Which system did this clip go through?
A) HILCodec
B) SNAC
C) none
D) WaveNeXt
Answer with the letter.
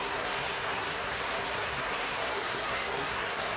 B